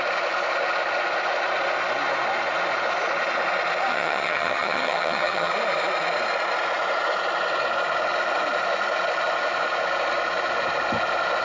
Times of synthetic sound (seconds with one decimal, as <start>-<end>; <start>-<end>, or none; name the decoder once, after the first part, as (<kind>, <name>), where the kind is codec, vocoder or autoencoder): 3.9-5.5 (vocoder, HiFi-GAN)